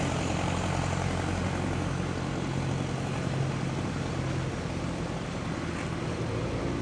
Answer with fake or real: real